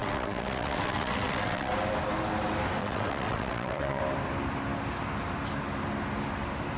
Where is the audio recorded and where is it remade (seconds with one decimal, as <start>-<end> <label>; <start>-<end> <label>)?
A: 0.0-1.7 remade; 1.7-2.8 recorded; 2.8-4.0 remade; 4.0-6.8 recorded